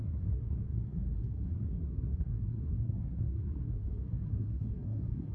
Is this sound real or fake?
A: fake